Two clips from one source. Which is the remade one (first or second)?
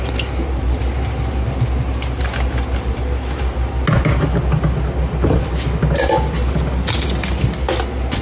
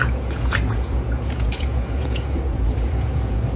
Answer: second